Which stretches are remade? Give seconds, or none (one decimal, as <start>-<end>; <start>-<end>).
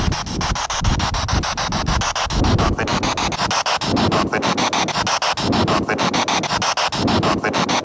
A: none